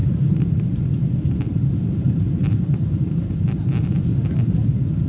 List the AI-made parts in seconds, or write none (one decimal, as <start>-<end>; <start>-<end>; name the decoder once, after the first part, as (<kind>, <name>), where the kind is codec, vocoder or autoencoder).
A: 0.0-0.6 (vocoder, BigVGAN v2); 1.5-3.6